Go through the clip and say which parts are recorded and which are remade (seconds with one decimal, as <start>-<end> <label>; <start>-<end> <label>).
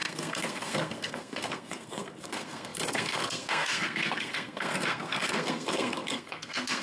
0.0-6.8 remade